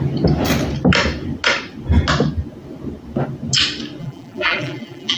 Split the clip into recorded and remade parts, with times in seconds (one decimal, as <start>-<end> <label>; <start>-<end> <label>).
0.0-4.0 recorded; 4.0-5.2 remade